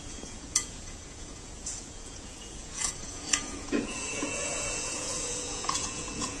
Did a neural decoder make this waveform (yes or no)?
yes